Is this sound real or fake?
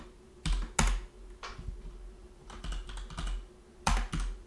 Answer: real